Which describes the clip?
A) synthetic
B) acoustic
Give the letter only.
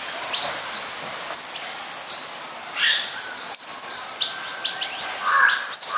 B